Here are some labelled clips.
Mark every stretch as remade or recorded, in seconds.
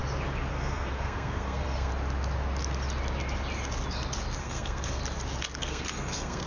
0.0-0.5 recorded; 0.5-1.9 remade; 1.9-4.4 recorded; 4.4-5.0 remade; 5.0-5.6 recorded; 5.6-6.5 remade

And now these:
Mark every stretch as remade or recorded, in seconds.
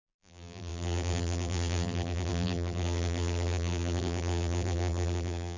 0.0-5.6 remade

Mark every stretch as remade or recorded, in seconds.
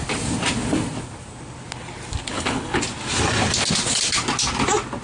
0.0-2.3 recorded; 2.3-2.8 remade; 2.8-5.0 recorded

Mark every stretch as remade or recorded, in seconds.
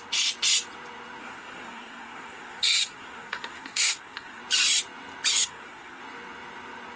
0.0-1.2 recorded; 1.2-4.4 remade; 4.4-5.4 recorded; 5.4-6.0 remade; 6.0-7.0 recorded